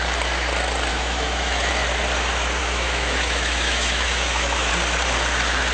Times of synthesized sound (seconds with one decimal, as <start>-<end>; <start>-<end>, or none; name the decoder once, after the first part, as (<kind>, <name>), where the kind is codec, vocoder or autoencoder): 0.9-1.7 (autoencoder, DAC-VAE); 2.6-4.7